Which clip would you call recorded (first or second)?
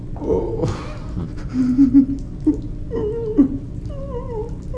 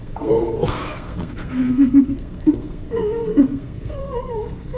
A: first